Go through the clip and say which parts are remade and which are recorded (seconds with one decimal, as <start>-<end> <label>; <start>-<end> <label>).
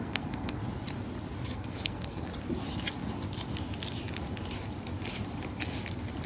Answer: 0.0-0.6 remade; 0.6-1.5 recorded; 1.5-2.3 remade; 2.3-6.3 recorded